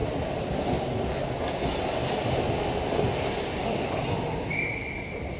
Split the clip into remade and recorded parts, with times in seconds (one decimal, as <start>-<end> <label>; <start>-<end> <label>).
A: 0.0-5.4 recorded